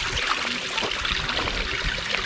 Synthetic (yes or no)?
no